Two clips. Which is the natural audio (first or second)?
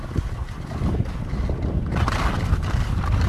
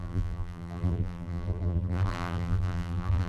first